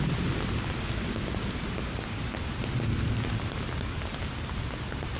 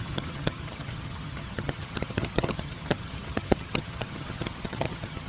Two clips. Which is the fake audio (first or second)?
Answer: second